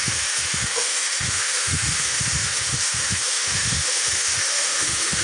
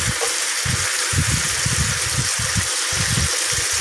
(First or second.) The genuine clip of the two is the second